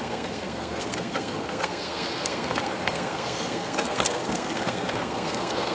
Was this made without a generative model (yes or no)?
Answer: no